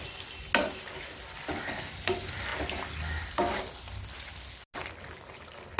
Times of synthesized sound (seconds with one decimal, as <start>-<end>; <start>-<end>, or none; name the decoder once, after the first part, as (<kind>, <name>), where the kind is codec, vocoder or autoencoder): none